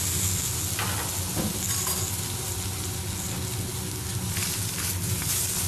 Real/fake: real